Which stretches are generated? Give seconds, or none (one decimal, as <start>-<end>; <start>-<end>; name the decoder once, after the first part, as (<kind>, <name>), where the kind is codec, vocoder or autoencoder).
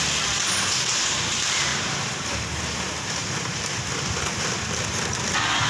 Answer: 1.7-2.3 (vocoder, BigVGAN v2); 3.2-4.0